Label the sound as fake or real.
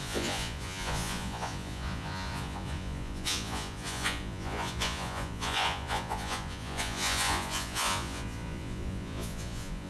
fake